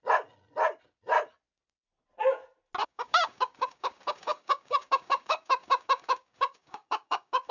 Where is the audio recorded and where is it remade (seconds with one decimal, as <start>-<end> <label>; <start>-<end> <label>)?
0.0-2.8 recorded; 2.8-7.5 remade